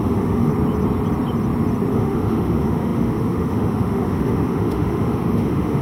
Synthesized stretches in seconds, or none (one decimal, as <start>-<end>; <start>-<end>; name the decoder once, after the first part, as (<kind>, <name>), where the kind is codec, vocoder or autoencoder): 0.0-0.5 (autoencoder, DAC-VAE); 1.9-5.8